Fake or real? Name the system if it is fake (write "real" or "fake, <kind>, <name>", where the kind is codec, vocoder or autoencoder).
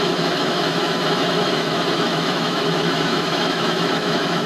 fake, autoencoder, DAC-VAE